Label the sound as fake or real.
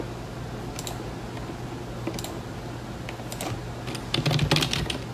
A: real